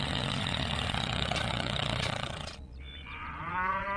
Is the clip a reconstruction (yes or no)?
yes